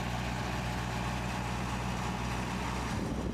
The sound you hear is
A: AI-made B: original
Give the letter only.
B